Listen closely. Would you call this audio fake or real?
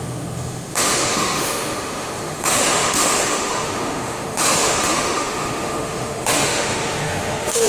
fake